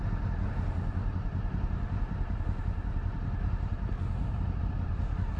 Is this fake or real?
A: real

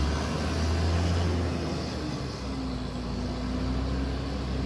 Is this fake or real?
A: real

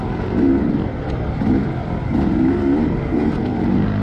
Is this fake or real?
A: real